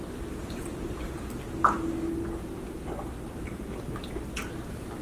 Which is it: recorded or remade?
recorded